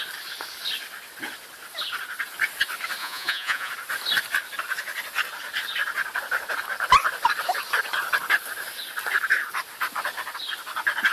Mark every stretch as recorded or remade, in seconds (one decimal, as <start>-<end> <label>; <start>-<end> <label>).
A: 0.0-3.0 recorded; 3.0-3.7 remade; 3.7-11.1 recorded